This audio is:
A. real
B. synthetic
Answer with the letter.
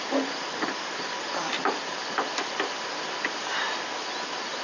A